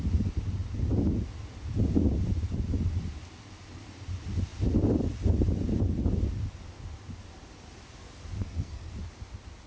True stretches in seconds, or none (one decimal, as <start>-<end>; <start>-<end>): 0.0-8.4; 8.9-9.7